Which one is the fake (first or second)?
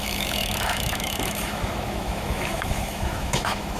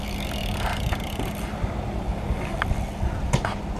first